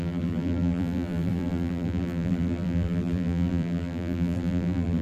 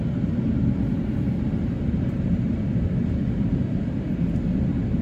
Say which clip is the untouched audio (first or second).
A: second